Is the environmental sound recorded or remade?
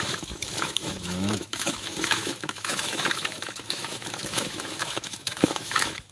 remade